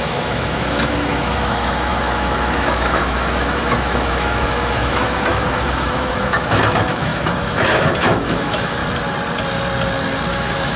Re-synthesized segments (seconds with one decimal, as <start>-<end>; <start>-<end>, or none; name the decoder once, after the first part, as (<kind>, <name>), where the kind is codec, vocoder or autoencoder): 0.0-8.8 (autoencoder, DAC-VAE); 10.3-10.8